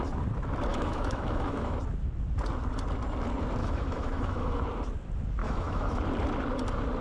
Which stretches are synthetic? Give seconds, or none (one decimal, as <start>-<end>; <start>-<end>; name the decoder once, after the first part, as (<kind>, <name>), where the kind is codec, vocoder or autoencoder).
0.7-1.8 (autoencoder, DAC-VAE); 3.6-4.6; 5.4-6.0